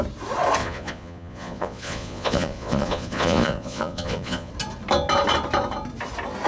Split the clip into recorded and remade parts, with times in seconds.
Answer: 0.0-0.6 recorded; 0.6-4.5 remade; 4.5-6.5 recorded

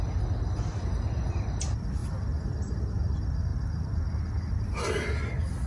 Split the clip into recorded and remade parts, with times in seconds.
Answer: 0.0-5.7 recorded